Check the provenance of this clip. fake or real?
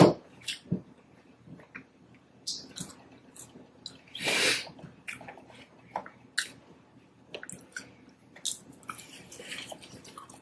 real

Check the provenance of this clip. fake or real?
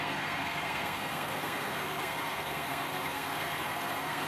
fake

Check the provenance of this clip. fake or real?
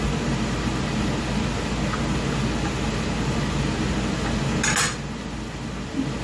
real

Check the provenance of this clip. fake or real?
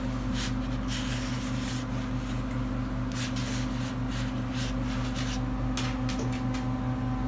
real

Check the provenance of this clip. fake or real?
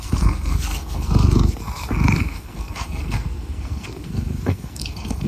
fake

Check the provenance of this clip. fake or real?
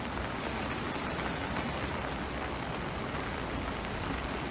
real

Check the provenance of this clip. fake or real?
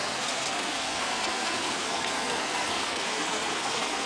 fake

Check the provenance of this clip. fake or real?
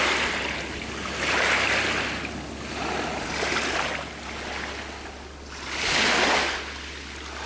real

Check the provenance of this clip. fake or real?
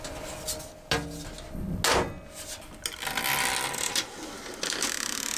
real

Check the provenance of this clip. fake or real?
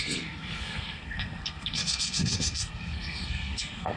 fake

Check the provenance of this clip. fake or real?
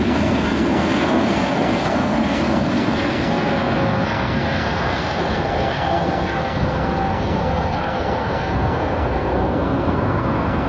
fake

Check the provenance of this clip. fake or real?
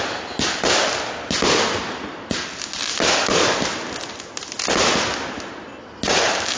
real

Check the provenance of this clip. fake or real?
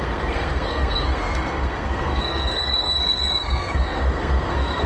fake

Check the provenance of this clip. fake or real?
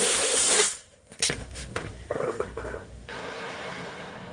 fake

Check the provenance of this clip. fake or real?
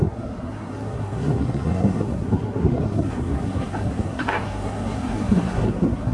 fake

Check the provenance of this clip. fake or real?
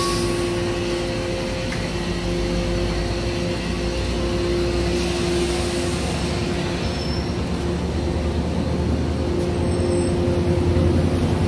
real